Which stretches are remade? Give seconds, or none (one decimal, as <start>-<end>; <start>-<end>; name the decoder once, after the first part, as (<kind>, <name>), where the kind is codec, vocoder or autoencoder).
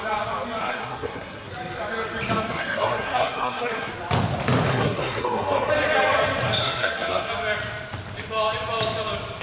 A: 0.6-1.5 (codec, SNAC); 2.5-3.9; 4.7-5.7; 6.6-7.3